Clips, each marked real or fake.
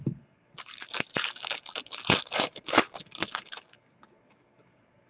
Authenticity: fake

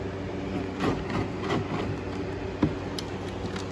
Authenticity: real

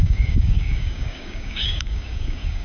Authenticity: fake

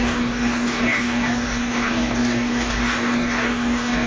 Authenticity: fake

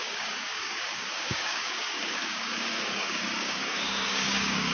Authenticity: fake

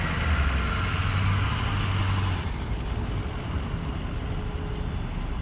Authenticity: real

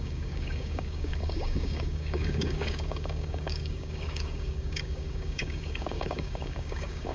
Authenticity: fake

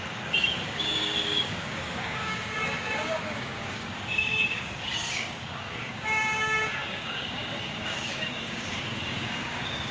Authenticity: fake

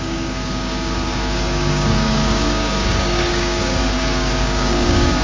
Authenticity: fake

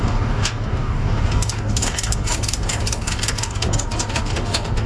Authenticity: fake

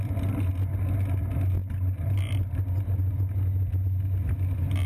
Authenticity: real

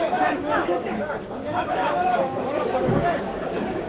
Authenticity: fake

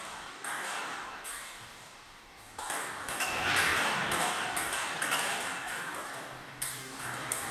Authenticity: fake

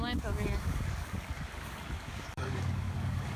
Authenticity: fake